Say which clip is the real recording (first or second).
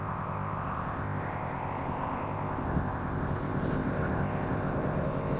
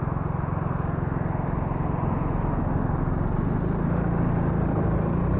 second